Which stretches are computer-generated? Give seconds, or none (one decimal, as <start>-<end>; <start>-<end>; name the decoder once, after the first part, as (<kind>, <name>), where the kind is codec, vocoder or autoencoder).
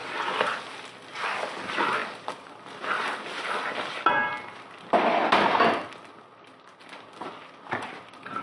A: none